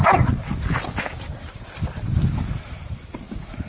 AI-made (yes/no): no